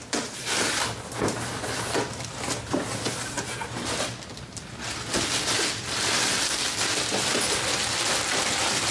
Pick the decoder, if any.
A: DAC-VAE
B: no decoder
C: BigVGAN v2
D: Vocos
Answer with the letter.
B